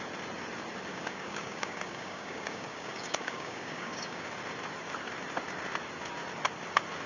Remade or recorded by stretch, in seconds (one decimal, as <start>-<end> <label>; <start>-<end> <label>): 0.0-0.9 recorded; 0.9-4.3 remade; 4.3-7.1 recorded